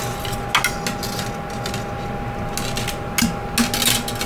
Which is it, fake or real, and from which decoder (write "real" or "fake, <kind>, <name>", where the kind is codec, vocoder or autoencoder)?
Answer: real